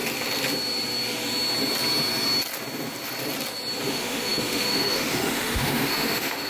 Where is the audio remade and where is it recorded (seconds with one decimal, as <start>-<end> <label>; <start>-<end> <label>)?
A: 0.0-3.9 recorded; 3.9-6.5 remade